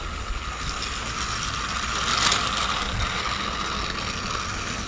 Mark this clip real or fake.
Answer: real